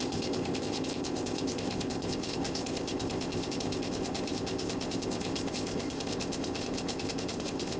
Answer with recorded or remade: remade